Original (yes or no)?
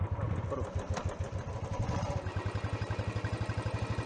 yes